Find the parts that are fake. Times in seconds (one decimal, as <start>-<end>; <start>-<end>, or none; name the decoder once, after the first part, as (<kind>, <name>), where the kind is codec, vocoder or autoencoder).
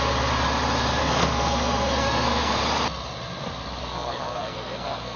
1.0-2.6 (codec, SNAC); 3.8-5.2